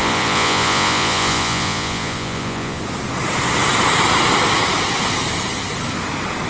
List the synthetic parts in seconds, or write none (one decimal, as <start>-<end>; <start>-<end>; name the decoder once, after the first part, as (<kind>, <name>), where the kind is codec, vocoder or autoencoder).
0.0-2.8 (vocoder, Vocos)